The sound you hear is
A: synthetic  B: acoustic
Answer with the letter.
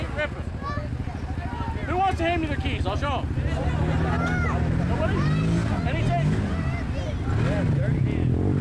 B